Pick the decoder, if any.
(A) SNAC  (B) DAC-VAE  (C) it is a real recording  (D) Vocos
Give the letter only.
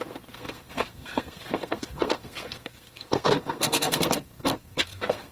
A